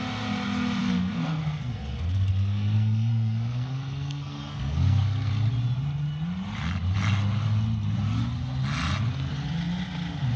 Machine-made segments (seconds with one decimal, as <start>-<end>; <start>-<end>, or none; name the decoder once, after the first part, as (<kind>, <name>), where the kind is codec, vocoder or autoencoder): 0.8-5.3 (codec, SNAC)